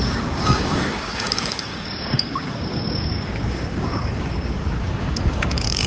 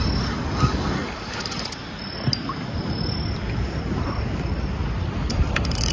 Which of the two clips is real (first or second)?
second